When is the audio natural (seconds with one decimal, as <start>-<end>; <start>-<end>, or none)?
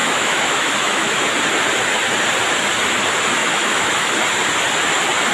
1.2-3.4; 4.1-5.3